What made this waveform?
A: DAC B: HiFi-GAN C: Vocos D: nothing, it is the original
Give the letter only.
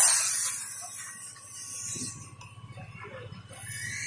D